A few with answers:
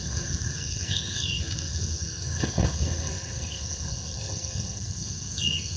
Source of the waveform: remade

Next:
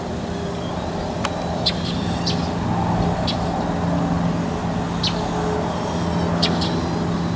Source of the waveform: recorded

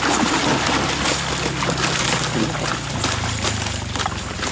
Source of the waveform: recorded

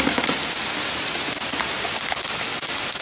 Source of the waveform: recorded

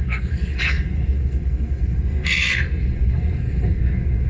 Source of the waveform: remade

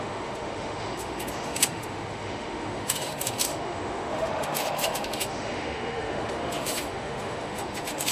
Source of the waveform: remade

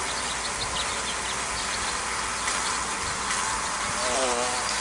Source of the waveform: recorded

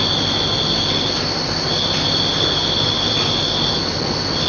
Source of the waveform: recorded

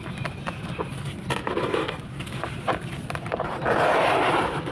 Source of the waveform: recorded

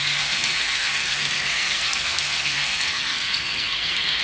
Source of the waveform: remade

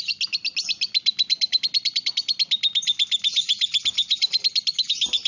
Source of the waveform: recorded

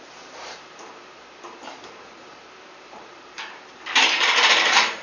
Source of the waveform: remade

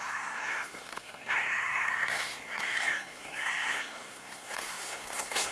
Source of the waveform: remade